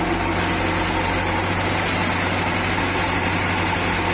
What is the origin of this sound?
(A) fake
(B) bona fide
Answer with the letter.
B